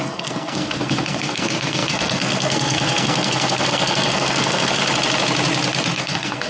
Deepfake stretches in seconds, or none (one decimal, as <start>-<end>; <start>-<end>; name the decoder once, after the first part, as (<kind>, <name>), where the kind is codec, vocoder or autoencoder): 0.0-4.8 (codec, SNAC); 6.0-6.5

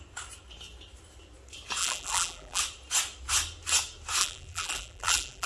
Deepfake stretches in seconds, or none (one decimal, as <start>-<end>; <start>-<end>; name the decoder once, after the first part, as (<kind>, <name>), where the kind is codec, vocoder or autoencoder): 1.8-2.6 (vocoder, BigVGAN v2); 4.2-5.5

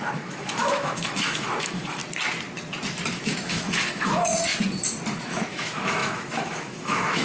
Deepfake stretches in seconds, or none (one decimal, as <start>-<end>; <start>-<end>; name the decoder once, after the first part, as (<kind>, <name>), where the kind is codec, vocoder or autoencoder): 0.0-2.0 (autoencoder, DAC-VAE); 3.1-4.5; 5.2-7.2

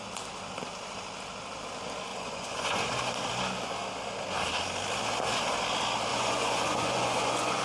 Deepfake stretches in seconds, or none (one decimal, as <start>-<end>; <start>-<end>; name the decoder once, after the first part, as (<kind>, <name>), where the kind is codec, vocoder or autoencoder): 2.1-2.8 (vocoder, Vocos); 6.1-7.6